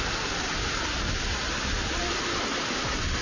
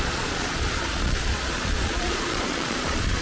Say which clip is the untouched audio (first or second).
first